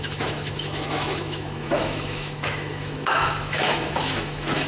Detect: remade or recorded remade